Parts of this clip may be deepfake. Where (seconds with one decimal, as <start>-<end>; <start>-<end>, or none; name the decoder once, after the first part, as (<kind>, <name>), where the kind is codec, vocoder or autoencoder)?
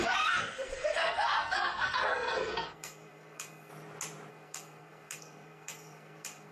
0.0-3.7 (codec, SNAC); 4.3-6.5